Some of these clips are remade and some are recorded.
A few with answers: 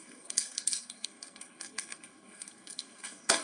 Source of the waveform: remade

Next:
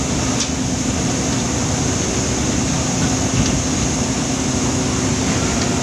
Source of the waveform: recorded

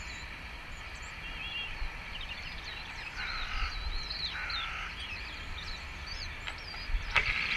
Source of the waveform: recorded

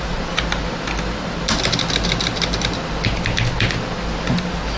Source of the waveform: recorded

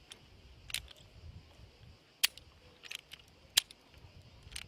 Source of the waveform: recorded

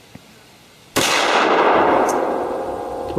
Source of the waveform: recorded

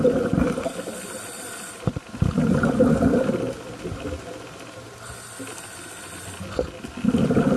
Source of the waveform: recorded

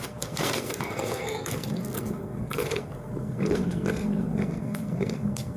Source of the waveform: remade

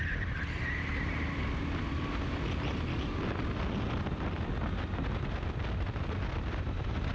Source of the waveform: recorded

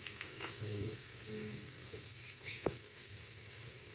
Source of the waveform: remade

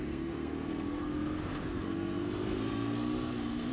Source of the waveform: remade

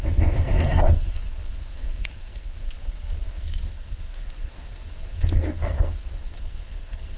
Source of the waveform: remade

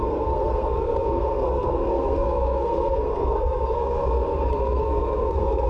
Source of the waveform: remade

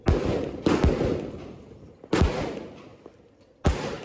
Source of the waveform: recorded